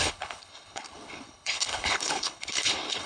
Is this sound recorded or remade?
remade